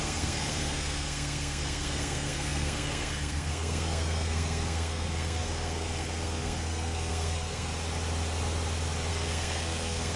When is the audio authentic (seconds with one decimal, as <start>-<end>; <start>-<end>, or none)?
7.7-9.1

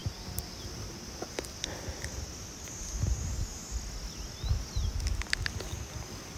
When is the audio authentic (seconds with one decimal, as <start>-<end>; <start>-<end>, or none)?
0.0-6.4